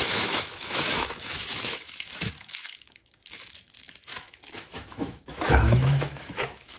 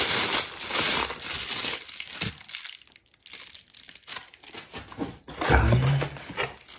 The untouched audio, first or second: second